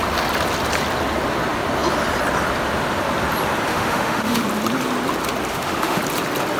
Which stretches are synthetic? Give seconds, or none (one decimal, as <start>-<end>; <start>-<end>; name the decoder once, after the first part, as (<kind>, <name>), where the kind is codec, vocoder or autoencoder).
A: 3.7-4.4 (autoencoder, DAC-VAE); 5.5-6.0